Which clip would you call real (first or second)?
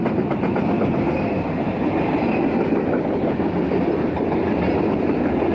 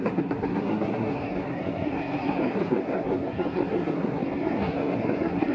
first